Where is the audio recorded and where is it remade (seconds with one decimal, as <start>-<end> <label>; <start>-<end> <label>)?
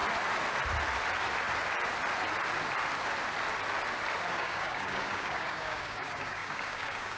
0.0-4.3 recorded; 4.3-7.2 remade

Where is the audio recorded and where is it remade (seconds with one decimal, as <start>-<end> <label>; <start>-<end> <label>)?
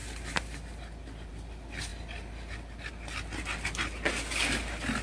0.0-5.0 recorded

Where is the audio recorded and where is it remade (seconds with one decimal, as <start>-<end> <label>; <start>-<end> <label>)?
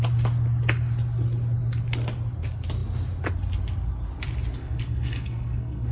0.0-4.6 recorded; 4.6-5.9 remade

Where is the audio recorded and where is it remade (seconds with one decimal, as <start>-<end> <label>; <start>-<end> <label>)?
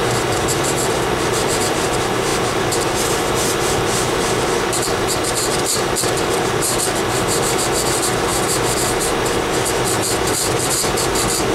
0.0-11.5 recorded